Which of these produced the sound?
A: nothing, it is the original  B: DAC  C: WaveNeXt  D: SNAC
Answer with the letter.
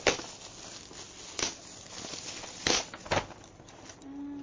A